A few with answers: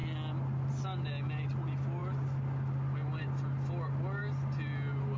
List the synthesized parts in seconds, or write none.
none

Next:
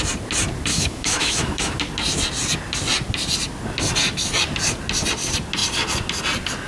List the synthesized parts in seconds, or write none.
0.7-1.8 (autoencoder, DAC-VAE)

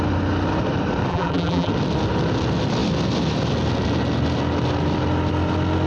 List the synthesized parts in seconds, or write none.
1.1-1.7 (vocoder, BigVGAN v2)

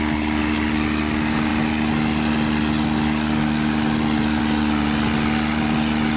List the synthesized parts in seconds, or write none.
none

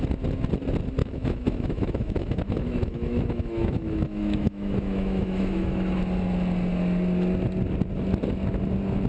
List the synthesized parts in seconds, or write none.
1.0-6.0 (autoencoder, DAC-VAE)

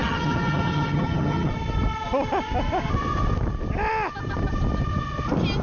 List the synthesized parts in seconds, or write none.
0.0-1.5 (vocoder, HiFi-GAN)